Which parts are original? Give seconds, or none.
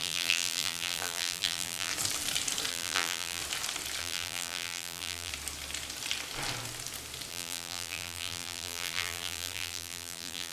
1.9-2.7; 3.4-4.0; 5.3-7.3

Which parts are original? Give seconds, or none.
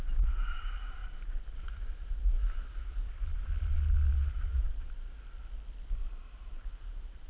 1.0-4.1; 5.1-6.1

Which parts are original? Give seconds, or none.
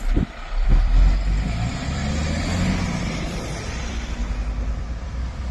2.0-3.7; 4.2-4.8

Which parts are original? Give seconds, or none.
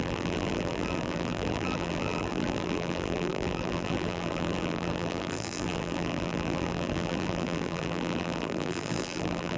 none